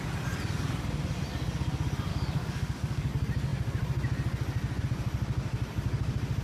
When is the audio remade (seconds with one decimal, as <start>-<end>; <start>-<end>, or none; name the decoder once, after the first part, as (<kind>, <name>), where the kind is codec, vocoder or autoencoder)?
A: 2.1-3.1 (codec, DAC)